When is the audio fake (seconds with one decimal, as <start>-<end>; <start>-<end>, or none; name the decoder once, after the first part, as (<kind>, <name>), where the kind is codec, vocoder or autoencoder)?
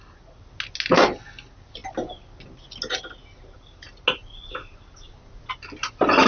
none